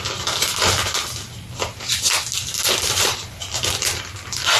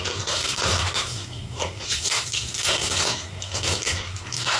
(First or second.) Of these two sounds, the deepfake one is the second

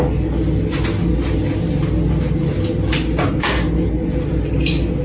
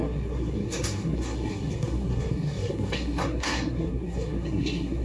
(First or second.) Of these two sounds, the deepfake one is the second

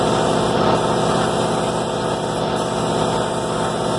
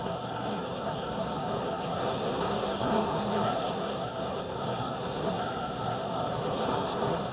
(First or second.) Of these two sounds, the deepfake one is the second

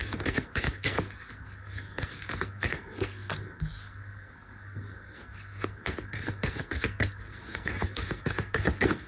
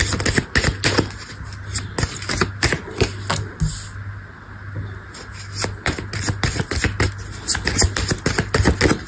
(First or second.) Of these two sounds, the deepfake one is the first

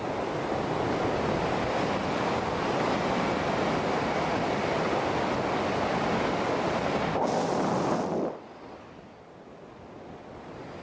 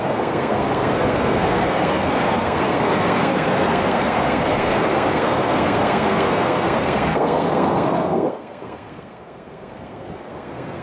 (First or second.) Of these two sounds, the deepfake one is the second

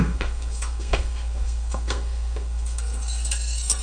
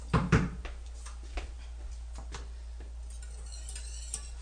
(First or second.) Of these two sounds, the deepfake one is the first